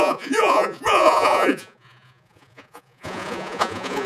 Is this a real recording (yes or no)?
no